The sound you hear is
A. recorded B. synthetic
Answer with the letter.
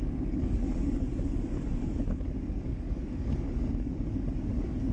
B